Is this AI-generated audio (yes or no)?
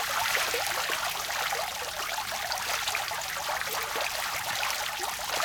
no